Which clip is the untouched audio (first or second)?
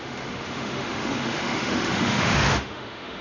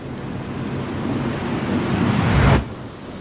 second